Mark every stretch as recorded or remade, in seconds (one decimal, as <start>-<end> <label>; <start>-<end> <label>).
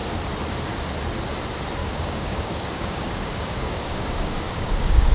0.0-1.8 recorded; 1.8-5.1 remade